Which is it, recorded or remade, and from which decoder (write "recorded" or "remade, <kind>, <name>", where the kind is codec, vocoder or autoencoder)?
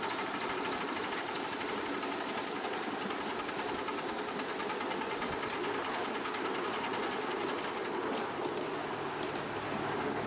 recorded